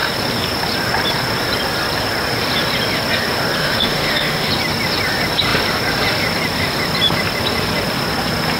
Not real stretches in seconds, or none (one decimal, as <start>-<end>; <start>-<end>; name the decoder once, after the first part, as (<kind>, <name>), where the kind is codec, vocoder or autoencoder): 3.6-4.5 (autoencoder, DAC-VAE)